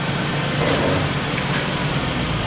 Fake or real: real